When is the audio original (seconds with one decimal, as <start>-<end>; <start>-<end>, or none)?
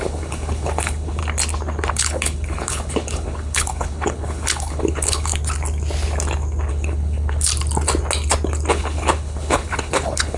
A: 1.2-1.9; 5.3-6.7; 7.5-8.7